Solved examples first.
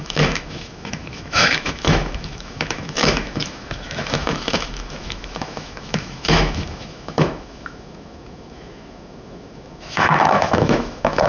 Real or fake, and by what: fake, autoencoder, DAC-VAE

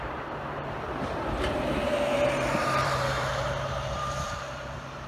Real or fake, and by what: fake, vocoder, BigVGAN v2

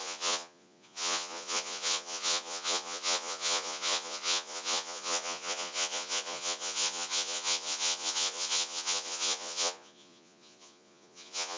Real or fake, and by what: fake, vocoder, Vocos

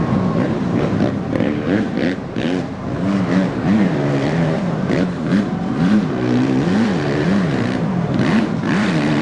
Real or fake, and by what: fake, vocoder, BigVGAN v2